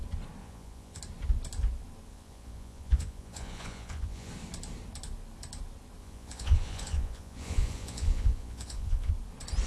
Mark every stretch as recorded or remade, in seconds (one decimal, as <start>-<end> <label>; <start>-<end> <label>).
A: 0.0-0.4 recorded; 0.4-1.0 remade; 1.0-2.1 recorded; 2.1-4.3 remade; 4.3-6.0 recorded; 6.0-9.1 remade; 9.1-9.7 recorded